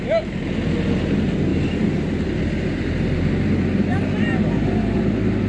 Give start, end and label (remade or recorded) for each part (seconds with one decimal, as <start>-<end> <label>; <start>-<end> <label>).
0.0-5.5 recorded